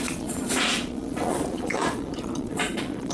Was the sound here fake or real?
fake